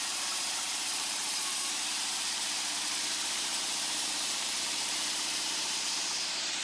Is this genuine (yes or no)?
no